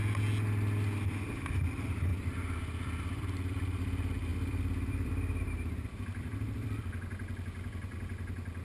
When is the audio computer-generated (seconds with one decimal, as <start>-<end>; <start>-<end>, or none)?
2.1-3.8; 4.3-6.8